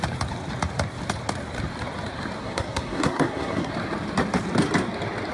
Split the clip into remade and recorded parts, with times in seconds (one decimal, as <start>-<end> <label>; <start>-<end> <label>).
0.0-2.4 recorded; 2.4-3.7 remade; 3.7-5.3 recorded